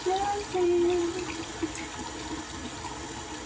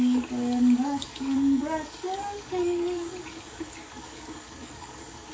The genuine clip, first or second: first